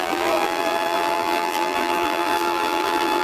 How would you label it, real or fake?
fake